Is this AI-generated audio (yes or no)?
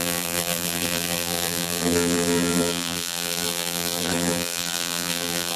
yes